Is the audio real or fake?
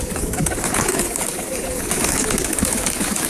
fake